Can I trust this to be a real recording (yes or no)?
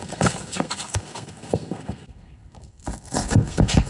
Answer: no